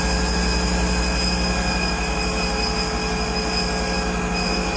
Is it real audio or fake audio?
real